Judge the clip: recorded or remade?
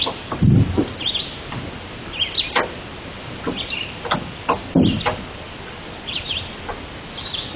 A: recorded